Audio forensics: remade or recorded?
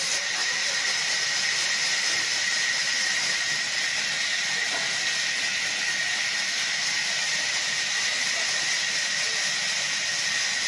recorded